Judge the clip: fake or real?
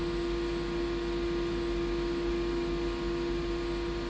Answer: real